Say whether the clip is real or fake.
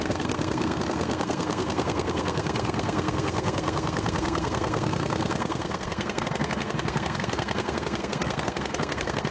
fake